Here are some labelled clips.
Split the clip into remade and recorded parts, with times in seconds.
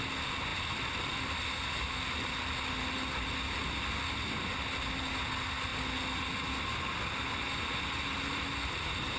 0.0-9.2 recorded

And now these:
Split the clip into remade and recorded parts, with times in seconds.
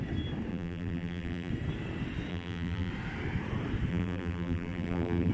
0.0-0.5 recorded; 0.5-1.5 remade; 1.5-2.3 recorded; 2.3-2.9 remade; 2.9-3.9 recorded; 3.9-5.3 remade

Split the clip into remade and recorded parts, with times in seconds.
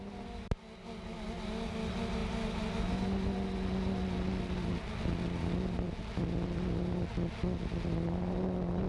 0.0-8.9 recorded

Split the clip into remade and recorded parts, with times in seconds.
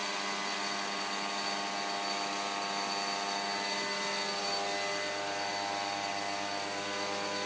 0.0-7.5 recorded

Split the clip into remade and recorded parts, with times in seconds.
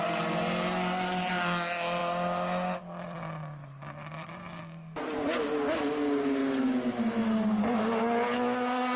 0.0-9.0 recorded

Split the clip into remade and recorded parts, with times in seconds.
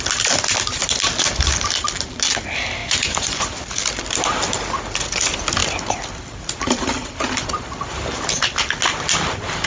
0.0-2.8 recorded; 2.8-3.5 remade; 3.5-9.7 recorded